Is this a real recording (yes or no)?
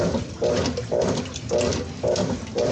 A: no